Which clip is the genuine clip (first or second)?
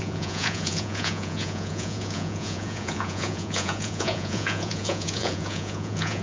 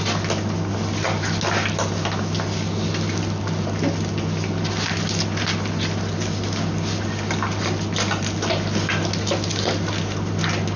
second